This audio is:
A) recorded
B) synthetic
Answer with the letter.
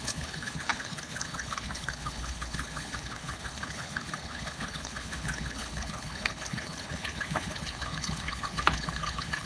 B